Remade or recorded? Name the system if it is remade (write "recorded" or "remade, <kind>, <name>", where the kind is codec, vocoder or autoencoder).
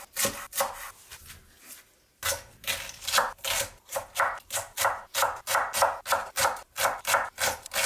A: recorded